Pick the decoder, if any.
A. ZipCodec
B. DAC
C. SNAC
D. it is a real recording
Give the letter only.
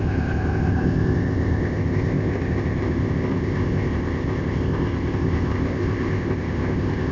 A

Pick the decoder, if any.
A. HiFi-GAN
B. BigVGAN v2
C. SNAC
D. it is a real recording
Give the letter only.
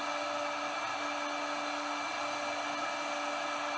D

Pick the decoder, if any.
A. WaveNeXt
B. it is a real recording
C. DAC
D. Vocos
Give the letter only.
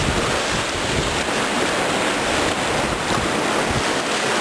B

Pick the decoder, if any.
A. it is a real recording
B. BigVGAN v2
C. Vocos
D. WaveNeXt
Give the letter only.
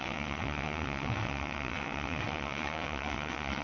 D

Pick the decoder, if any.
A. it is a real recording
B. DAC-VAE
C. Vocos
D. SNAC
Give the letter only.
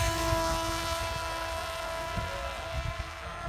D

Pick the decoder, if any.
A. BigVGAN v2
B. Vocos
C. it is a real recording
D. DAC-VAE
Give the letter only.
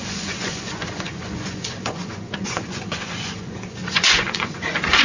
B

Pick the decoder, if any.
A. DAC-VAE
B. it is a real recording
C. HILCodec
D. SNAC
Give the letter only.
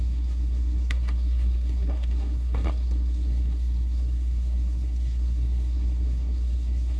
D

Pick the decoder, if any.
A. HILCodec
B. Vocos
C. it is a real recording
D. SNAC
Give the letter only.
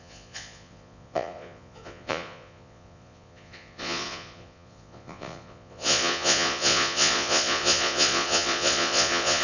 B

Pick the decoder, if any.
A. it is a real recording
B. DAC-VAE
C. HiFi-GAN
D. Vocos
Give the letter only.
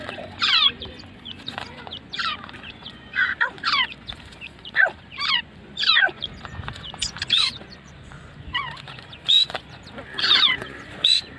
D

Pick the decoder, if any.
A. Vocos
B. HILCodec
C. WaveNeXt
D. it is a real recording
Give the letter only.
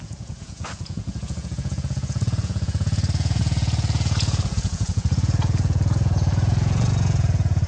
A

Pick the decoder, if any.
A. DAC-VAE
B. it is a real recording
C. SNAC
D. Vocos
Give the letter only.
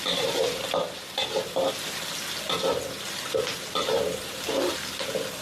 B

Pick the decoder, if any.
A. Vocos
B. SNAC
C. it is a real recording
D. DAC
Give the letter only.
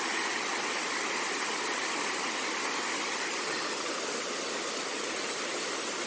C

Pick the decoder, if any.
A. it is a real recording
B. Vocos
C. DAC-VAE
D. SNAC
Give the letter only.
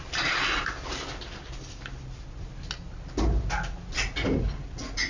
A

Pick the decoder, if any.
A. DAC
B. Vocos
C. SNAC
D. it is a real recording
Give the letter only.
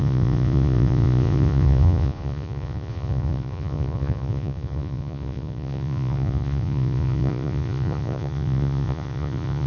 B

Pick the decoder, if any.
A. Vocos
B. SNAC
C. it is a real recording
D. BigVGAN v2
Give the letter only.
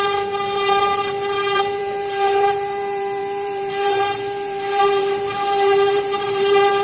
D